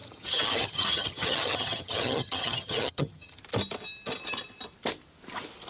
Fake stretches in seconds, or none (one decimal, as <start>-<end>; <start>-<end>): 0.0-3.4